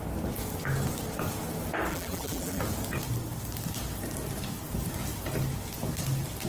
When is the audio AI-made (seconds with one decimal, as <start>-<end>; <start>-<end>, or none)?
1.9-2.6